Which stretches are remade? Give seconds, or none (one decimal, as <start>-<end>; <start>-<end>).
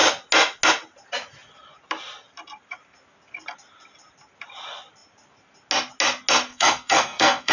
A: 6.5-7.5